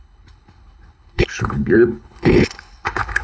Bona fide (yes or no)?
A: no